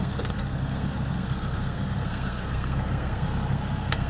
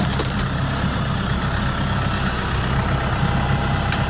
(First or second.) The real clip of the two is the second